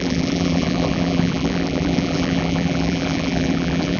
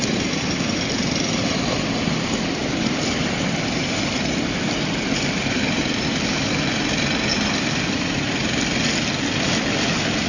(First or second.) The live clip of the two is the second